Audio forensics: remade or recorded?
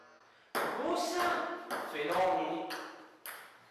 recorded